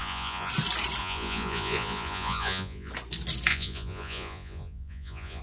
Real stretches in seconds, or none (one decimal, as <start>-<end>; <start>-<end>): 0.5-1.0; 2.9-3.5

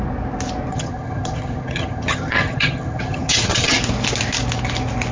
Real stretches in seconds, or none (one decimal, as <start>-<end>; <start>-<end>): 0.0-0.7; 3.8-5.1

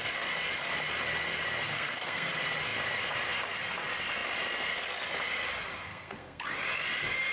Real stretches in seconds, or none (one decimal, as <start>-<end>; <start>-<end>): 0.0-1.7; 2.3-5.9; 6.5-7.3

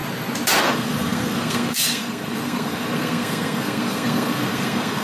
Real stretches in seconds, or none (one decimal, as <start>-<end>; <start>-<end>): 0.0-0.6

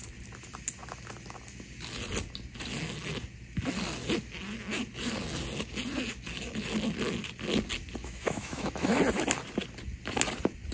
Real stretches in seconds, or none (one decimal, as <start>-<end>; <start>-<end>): 0.0-8.0; 9.0-10.7

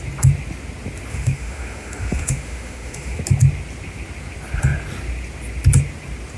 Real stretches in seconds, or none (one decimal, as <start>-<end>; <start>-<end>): 0.0-1.1; 3.2-6.4

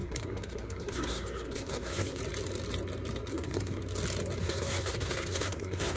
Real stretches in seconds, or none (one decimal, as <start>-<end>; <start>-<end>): 2.2-3.3; 3.8-4.4

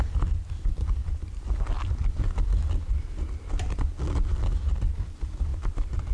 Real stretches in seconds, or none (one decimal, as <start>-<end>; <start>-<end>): 0.0-6.1